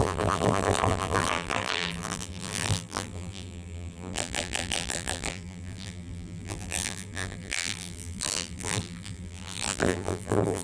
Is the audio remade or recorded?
remade